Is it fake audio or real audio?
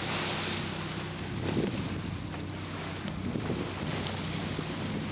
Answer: real